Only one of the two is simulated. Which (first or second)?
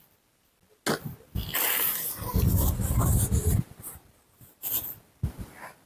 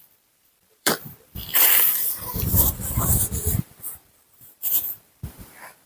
second